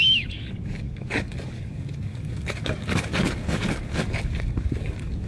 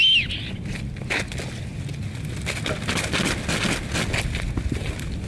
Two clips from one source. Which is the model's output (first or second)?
first